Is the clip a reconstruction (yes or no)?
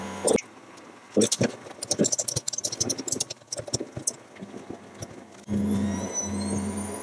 no